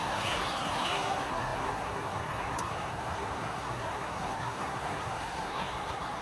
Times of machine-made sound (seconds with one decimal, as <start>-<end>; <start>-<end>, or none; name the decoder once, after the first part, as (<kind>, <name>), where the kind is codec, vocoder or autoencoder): 0.0-6.2 (codec, SNAC)